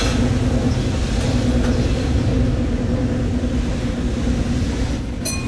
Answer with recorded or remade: recorded